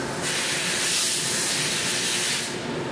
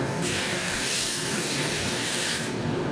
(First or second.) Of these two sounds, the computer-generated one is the second